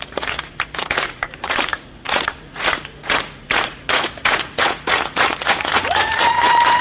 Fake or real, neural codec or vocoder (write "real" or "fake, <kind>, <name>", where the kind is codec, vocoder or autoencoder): fake, vocoder, Vocos